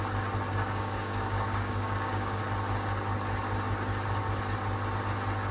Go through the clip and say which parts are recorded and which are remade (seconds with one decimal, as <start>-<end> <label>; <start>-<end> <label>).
0.0-0.5 recorded; 0.5-2.4 remade; 2.4-5.5 recorded